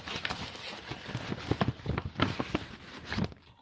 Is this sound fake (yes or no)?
no